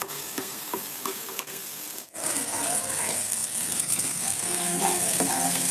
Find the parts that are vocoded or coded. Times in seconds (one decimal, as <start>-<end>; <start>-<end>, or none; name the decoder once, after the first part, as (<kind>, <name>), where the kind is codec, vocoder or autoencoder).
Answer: 0.0-5.7 (codec, SNAC)

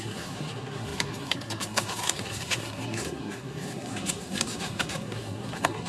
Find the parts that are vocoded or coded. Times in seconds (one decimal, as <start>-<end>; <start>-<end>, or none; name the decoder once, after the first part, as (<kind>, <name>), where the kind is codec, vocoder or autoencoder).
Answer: 0.0-5.9 (codec, SNAC)

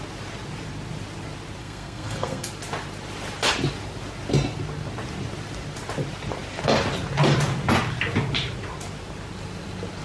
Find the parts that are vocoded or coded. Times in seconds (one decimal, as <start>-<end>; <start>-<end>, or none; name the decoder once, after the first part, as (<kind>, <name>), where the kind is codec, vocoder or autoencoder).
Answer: 1.6-2.5 (codec, SNAC)

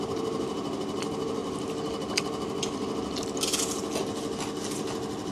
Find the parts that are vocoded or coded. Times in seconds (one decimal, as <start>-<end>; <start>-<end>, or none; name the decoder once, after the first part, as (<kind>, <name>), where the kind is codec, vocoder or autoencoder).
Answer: none

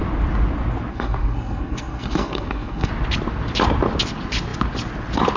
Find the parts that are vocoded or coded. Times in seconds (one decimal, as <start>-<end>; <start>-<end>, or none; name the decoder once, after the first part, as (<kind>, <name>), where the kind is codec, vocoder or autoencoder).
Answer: 0.9-2.9 (codec, SNAC)

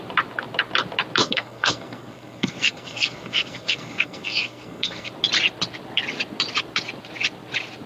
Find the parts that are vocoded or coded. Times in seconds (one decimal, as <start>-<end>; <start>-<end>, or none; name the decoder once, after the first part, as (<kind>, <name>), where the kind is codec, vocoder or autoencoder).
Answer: 1.2-5.1 (codec, SNAC)

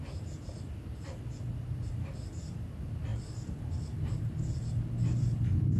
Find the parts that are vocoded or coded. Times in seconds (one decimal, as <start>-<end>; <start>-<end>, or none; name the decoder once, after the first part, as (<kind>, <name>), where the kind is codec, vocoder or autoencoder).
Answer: none

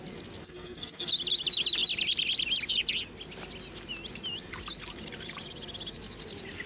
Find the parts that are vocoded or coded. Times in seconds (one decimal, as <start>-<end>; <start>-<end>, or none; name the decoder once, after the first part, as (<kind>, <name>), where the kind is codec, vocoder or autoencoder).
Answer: 0.4-1.1 (codec, SNAC)